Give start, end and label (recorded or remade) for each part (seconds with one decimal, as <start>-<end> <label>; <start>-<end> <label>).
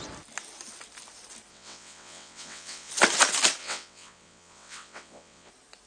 0.0-1.5 recorded; 1.5-2.9 remade; 2.9-3.6 recorded; 3.6-5.5 remade; 5.5-5.9 recorded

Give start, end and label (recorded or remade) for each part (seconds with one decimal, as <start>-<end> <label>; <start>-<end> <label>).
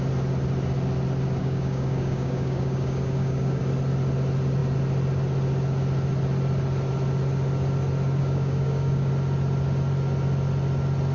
0.0-1.4 recorded; 1.4-3.6 remade; 3.6-8.2 recorded; 8.2-9.1 remade; 9.1-11.1 recorded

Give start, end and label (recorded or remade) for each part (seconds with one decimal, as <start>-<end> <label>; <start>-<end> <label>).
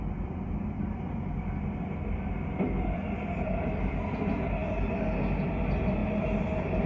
0.0-4.6 remade; 4.6-5.5 recorded; 5.5-6.0 remade; 6.0-6.9 recorded